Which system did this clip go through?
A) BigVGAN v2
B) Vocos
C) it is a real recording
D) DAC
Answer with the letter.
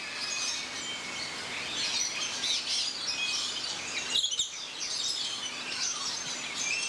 C